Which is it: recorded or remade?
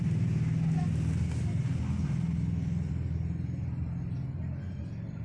recorded